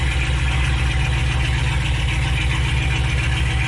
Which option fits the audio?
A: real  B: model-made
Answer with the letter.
A